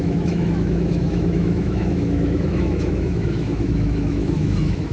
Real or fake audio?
fake